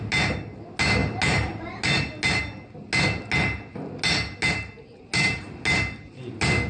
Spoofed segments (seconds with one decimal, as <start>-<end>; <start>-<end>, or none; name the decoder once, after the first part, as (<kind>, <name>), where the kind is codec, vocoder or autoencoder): none